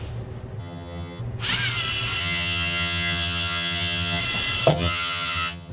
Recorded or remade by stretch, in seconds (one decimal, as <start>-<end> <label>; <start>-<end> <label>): 0.0-0.6 recorded; 0.6-1.2 remade; 1.2-2.2 recorded; 2.2-4.2 remade; 4.2-4.7 recorded; 4.7-5.7 remade